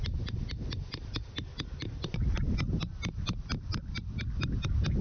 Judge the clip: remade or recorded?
recorded